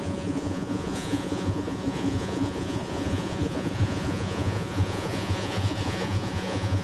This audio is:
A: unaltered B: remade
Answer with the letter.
B